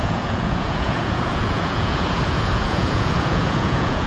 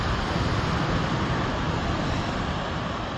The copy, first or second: first